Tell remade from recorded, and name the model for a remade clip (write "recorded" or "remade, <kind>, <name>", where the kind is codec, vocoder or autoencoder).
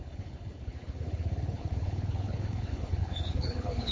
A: remade, codec, HILCodec